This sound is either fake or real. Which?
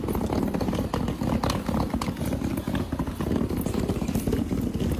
real